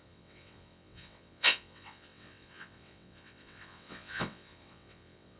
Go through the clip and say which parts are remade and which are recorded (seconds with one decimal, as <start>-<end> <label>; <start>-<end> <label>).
0.0-5.4 remade